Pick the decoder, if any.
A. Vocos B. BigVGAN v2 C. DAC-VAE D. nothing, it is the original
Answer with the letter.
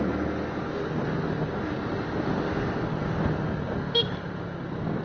D